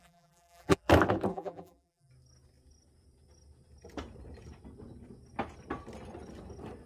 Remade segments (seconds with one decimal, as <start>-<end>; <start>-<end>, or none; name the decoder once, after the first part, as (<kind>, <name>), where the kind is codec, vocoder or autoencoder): 0.0-0.9 (vocoder, BigVGAN v2); 1.3-2.1